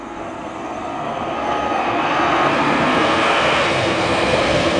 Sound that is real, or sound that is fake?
fake